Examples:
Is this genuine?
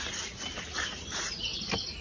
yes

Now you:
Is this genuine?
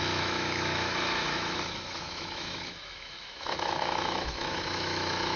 no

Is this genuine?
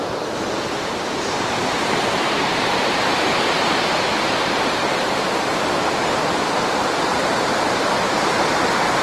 no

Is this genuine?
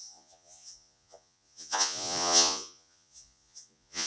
no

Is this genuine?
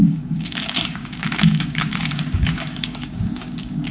no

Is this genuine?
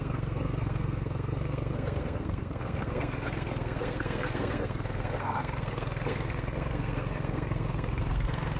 no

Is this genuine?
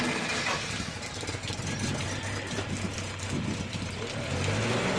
yes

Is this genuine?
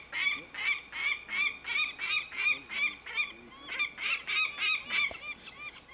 yes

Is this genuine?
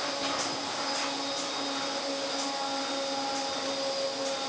yes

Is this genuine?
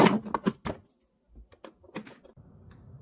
yes